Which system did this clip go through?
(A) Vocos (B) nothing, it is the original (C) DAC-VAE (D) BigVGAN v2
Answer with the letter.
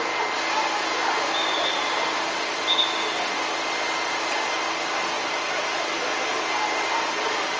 B